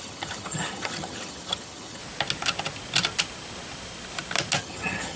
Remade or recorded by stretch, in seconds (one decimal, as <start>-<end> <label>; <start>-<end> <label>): 0.0-2.0 remade; 2.0-4.6 recorded; 4.6-5.2 remade